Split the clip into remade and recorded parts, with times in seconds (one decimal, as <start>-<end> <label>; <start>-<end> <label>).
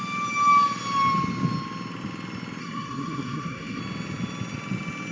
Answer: 0.0-2.6 recorded; 2.6-3.8 remade; 3.8-5.1 recorded